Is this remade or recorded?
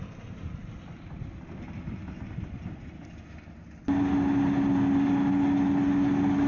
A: recorded